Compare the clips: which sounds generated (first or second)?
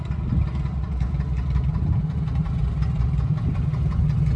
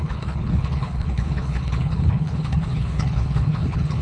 second